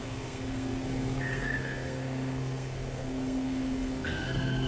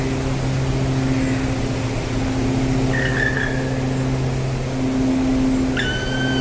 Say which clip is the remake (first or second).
first